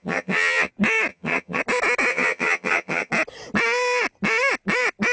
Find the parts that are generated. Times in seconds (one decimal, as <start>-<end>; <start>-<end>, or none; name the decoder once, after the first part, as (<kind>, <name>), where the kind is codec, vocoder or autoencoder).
0.0-0.7 (vocoder, HiFi-GAN); 1.1-1.6; 2.1-3.1